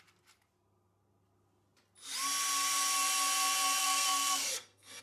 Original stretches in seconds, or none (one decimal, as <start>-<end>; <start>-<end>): 0.0-3.8